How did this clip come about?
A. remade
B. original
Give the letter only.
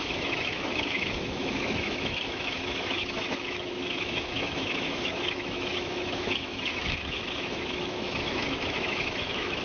A